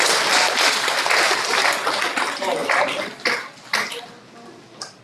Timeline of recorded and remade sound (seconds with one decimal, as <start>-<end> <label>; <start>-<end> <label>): 0.0-5.0 recorded